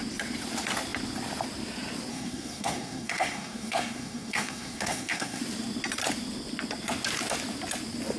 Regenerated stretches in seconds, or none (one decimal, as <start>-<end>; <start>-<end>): 2.1-5.4